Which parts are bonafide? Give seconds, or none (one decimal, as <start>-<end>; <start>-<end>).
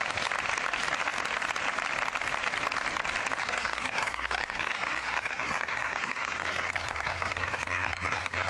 0.0-3.4